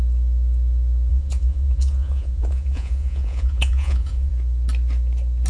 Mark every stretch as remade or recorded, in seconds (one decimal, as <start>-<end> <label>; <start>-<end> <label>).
0.0-1.1 recorded; 1.1-4.3 remade; 4.3-5.5 recorded